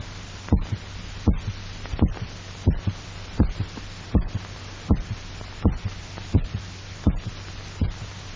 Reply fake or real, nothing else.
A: real